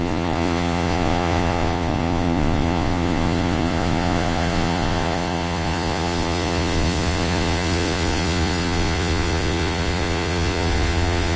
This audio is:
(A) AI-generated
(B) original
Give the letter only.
A